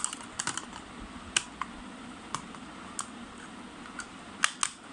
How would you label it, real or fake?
real